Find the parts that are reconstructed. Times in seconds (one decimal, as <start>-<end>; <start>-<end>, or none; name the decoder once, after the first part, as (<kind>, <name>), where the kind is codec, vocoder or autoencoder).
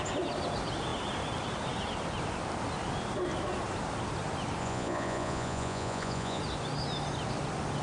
4.6-6.4 (vocoder, Vocos)